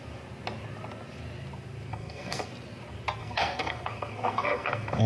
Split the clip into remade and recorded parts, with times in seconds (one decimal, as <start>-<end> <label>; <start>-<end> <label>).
0.0-1.9 recorded; 1.9-2.5 remade; 2.5-3.2 recorded; 3.2-5.1 remade